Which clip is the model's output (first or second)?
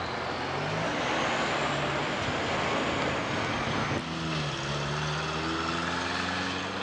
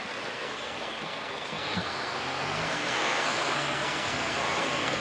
second